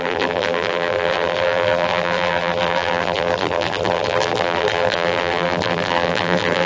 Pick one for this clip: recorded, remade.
remade